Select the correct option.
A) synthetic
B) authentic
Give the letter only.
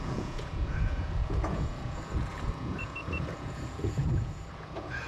A